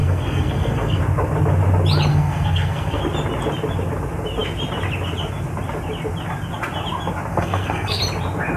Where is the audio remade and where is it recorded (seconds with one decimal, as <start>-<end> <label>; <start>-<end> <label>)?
0.0-1.0 remade; 1.0-2.1 recorded; 2.1-3.0 remade; 3.0-7.3 recorded; 7.3-8.0 remade; 8.0-8.6 recorded

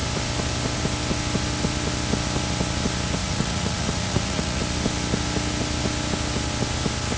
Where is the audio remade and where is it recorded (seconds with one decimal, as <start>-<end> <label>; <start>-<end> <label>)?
0.0-3.2 recorded; 3.2-4.6 remade; 4.6-7.2 recorded

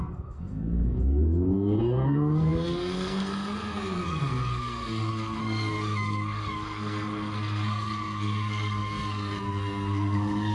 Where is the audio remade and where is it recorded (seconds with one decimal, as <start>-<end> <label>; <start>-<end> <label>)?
0.0-10.5 remade

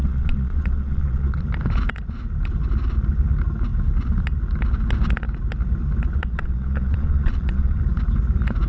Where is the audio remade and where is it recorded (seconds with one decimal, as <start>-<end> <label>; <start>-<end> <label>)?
0.0-1.4 remade; 1.4-6.2 recorded; 6.2-7.8 remade; 7.8-8.7 recorded

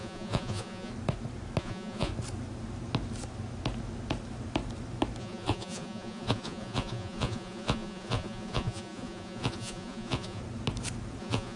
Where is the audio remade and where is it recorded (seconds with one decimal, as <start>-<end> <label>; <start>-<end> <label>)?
0.0-0.9 remade; 0.9-1.6 recorded; 1.6-2.1 remade; 2.1-5.2 recorded; 5.2-10.4 remade; 10.4-11.2 recorded; 11.2-11.6 remade